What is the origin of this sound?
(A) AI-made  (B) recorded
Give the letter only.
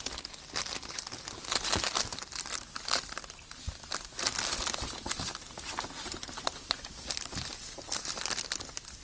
B